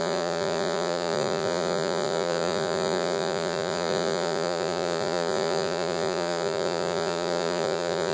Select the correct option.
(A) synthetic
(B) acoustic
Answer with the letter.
A